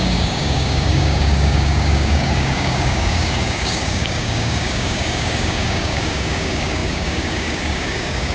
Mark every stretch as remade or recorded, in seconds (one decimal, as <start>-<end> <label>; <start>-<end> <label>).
0.0-8.3 remade